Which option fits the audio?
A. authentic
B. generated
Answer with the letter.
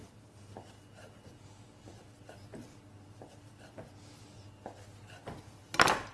A